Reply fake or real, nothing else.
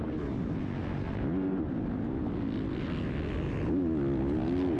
real